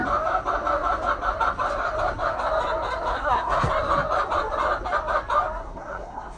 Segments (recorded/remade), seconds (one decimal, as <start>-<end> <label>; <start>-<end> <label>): 0.0-3.1 recorded; 3.1-3.7 remade; 3.7-5.6 recorded; 5.6-6.4 remade